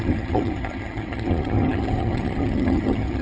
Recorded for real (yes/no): no